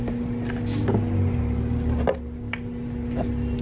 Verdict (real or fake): real